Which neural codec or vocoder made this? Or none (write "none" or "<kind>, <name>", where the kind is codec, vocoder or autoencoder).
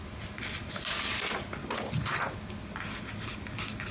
none